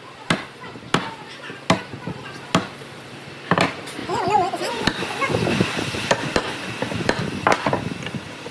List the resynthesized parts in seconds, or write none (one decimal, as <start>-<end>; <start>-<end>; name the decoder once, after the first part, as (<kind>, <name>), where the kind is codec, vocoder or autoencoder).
4.0-4.7 (vocoder, Vocos)